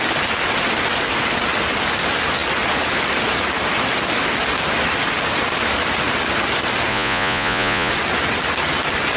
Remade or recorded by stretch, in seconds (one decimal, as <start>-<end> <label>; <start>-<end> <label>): 0.0-6.9 recorded; 6.9-7.9 remade; 7.9-9.2 recorded